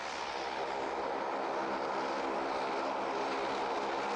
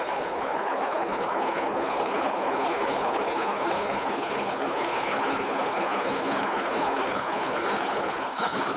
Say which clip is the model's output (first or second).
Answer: second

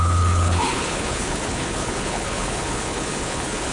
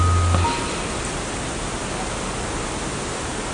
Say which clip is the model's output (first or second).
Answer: first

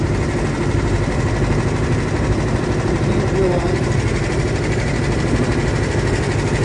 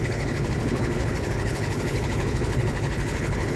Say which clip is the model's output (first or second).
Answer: second